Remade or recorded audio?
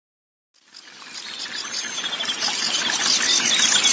recorded